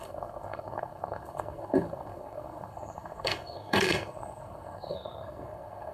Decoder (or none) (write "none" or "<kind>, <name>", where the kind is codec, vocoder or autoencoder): codec, SNAC